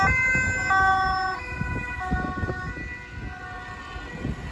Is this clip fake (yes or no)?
no